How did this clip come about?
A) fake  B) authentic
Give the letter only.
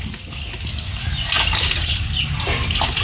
B